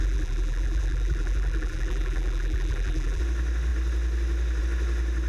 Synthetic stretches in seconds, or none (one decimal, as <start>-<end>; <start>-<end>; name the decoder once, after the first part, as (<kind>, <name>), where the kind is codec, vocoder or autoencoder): 0.0-3.2 (vocoder, BigVGAN v2)